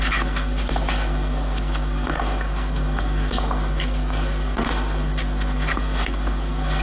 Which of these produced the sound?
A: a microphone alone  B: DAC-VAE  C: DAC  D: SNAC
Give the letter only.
D